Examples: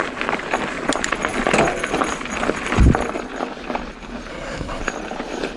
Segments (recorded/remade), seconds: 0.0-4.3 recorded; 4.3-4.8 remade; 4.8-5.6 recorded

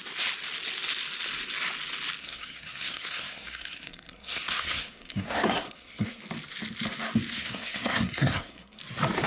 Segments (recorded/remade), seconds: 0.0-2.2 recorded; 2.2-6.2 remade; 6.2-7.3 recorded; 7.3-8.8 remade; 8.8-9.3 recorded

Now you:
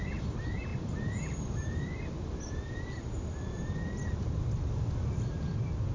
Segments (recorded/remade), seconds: 0.0-5.9 recorded

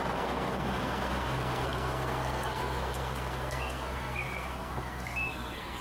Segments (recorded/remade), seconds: 0.0-5.8 remade

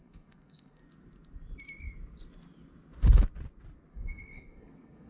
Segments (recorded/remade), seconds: 0.0-0.8 remade; 0.8-3.9 recorded; 3.9-5.1 remade

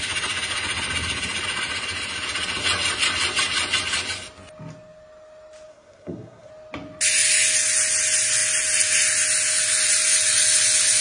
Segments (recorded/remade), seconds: 0.0-5.7 recorded; 5.7-6.5 remade; 6.5-11.0 recorded